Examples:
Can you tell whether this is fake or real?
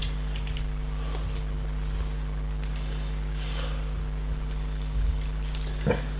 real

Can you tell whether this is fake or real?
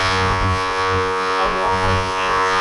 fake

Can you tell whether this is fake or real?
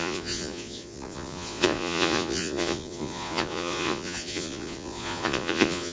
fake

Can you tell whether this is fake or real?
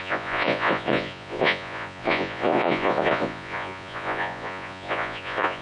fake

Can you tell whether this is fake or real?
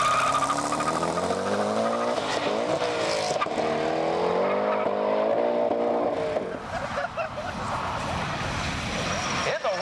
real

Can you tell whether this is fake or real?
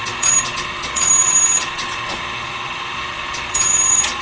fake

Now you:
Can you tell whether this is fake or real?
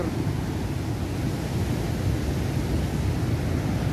real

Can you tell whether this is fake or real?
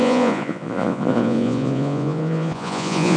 fake